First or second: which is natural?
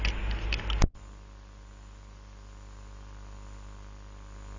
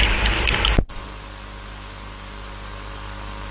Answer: first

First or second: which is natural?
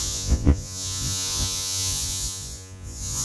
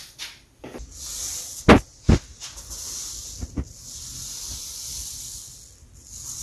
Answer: second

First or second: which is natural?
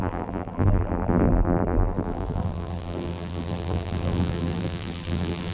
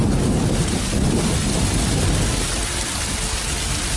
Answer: second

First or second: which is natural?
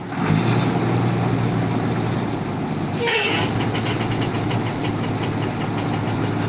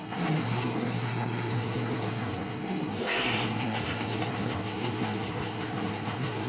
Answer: first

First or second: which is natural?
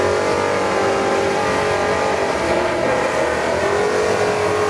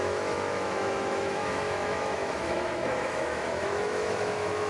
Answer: first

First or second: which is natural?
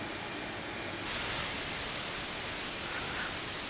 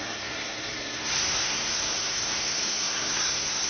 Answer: first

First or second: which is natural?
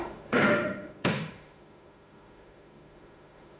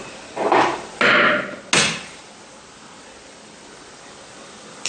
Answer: second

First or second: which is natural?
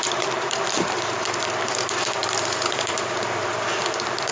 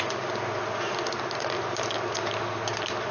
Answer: second